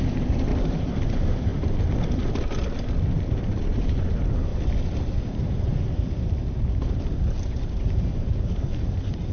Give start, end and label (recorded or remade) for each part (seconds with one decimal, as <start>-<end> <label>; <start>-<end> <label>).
0.0-0.5 remade; 0.5-1.1 recorded; 1.1-1.5 remade; 1.5-3.3 recorded; 3.3-4.5 remade; 4.5-5.3 recorded; 5.3-5.7 remade; 5.7-7.0 recorded; 7.0-9.3 remade